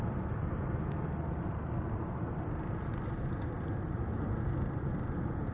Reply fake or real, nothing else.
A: real